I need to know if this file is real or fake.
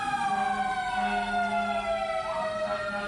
real